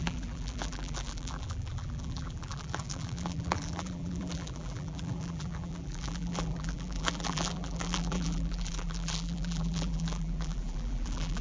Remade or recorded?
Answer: remade